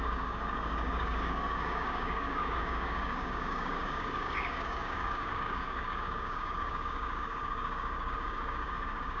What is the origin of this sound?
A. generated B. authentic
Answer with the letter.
A